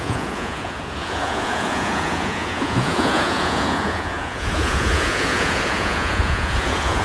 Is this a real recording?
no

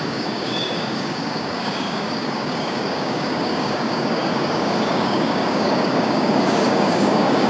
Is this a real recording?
no